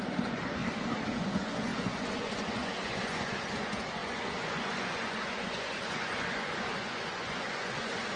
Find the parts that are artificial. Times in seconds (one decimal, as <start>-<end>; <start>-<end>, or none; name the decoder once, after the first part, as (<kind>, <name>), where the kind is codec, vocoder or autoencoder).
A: 0.0-0.6 (vocoder, Vocos); 1.1-8.2